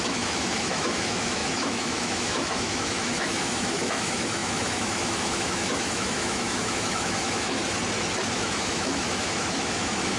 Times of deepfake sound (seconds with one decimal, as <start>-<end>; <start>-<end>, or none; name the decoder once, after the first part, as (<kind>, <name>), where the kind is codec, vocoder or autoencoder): 0.0-7.6 (autoencoder, DAC-VAE); 8.3-10.2